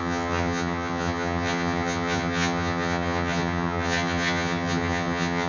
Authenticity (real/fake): fake